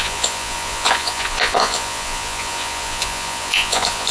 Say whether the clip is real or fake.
fake